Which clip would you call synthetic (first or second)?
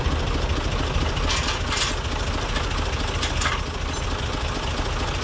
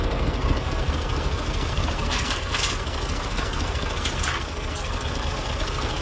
second